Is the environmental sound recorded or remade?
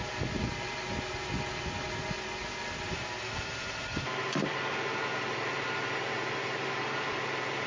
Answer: recorded